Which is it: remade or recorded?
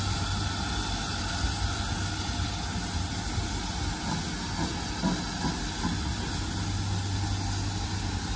recorded